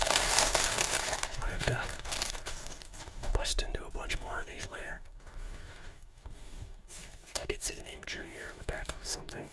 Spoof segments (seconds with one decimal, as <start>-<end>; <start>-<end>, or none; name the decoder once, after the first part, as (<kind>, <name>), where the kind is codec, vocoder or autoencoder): 0.0-3.5 (codec, DAC); 4.1-9.5